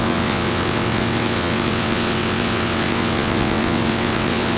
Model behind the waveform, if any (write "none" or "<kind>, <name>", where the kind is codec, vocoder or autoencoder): vocoder, WaveNeXt